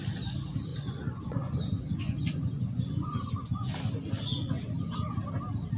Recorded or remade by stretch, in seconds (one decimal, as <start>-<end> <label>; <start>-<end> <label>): 0.0-0.7 recorded; 0.7-3.7 remade; 3.7-5.8 recorded